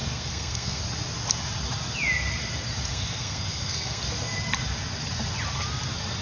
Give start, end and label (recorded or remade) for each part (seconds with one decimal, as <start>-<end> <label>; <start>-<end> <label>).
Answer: 0.0-0.8 remade; 0.8-2.9 recorded; 2.9-4.0 remade; 4.0-6.2 recorded